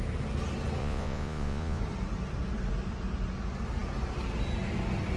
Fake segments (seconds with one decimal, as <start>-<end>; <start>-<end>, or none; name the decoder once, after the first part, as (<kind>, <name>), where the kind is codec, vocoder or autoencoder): 0.8-1.8 (vocoder, Vocos)